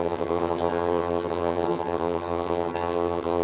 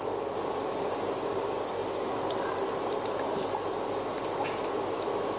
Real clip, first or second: second